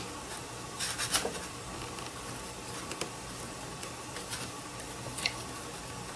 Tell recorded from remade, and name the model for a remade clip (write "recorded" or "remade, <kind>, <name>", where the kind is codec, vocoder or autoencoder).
recorded